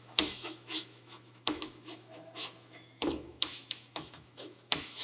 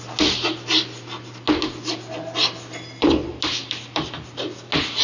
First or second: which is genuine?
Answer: second